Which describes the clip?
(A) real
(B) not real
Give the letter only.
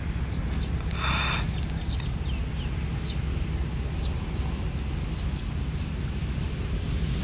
A